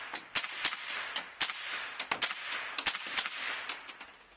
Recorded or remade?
recorded